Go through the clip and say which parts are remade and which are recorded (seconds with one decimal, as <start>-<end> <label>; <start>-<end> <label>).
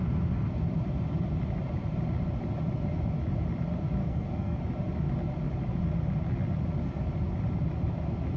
0.0-4.0 recorded; 4.0-4.6 remade; 4.6-8.4 recorded